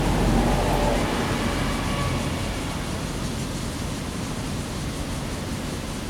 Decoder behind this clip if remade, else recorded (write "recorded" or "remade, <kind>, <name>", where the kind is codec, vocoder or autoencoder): recorded